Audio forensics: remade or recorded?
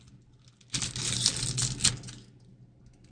recorded